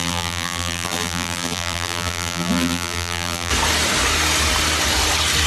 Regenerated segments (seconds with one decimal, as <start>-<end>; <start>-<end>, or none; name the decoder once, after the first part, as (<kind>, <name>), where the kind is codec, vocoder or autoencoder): 0.0-3.5 (vocoder, BigVGAN v2)